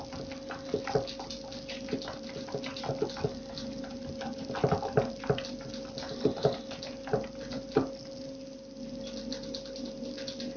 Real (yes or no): yes